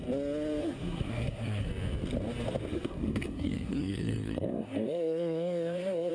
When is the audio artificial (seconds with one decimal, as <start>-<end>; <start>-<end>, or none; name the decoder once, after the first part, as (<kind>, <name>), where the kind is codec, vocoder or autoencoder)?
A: 0.6-1.7 (codec, SNAC); 2.7-6.1